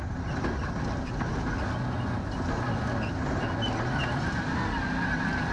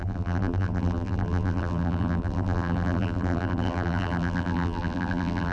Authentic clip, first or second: first